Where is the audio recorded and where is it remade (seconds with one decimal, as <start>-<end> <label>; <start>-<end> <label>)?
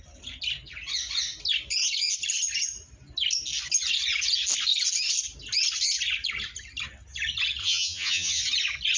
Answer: 0.0-7.6 recorded; 7.6-8.4 remade; 8.4-9.0 recorded